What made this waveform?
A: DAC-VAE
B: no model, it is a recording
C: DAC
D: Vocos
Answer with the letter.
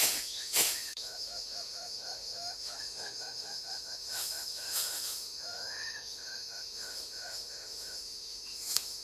A